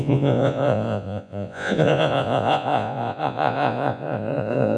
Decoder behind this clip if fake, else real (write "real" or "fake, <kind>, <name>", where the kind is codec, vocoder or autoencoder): fake, vocoder, Vocos